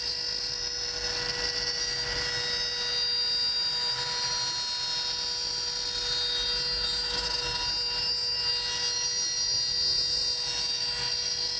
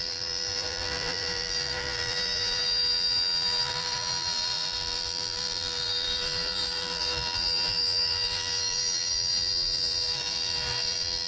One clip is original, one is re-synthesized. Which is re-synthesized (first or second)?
second